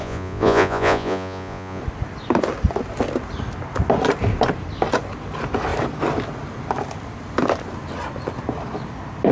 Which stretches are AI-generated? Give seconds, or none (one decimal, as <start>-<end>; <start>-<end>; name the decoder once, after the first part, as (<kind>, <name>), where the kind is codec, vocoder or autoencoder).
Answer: 0.0-1.8 (vocoder, Vocos)